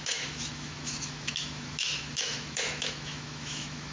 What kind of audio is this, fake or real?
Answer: fake